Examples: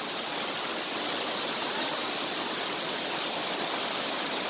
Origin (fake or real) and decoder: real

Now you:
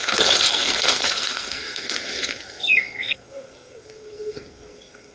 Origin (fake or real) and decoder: fake, codec, SNAC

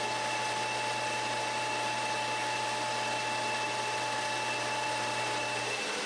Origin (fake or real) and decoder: real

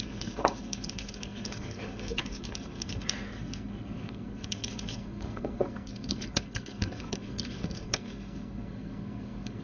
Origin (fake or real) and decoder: fake, codec, SNAC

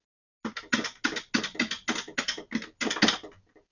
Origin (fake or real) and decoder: real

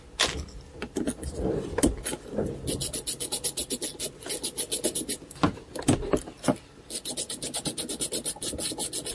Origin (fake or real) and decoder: real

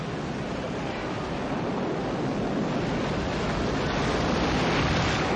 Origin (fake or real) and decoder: real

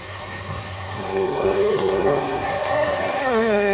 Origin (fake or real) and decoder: fake, codec, SNAC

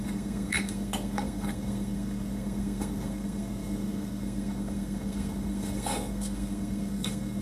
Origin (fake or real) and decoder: fake, codec, SNAC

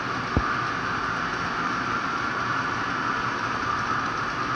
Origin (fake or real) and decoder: real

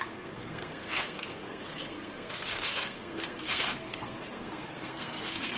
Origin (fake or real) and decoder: fake, codec, SNAC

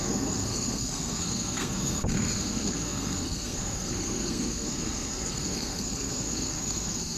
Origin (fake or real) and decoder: fake, codec, SNAC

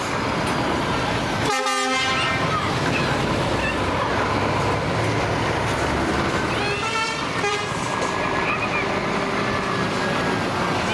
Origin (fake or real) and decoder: real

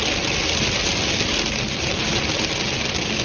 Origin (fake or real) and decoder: real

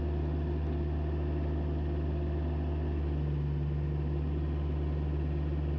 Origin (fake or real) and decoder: real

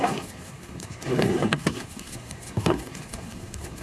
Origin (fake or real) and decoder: fake, codec, SNAC